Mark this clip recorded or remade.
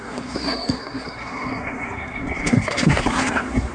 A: remade